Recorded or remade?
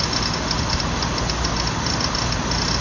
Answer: recorded